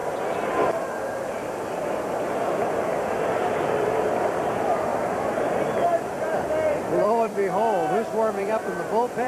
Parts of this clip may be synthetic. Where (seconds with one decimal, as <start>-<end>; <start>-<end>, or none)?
3.5-4.9; 5.9-7.4; 8.4-9.3